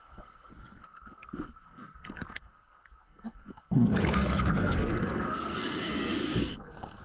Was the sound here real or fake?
fake